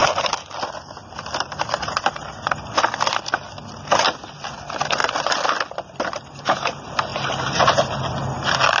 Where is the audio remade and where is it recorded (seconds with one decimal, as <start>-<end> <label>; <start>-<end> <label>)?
0.0-8.8 recorded